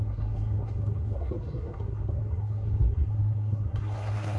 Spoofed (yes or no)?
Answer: yes